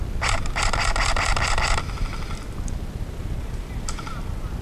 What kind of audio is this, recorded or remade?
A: recorded